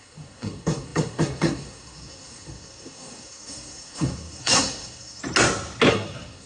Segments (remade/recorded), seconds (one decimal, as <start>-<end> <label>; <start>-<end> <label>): 0.0-5.2 remade; 5.2-5.9 recorded; 5.9-6.5 remade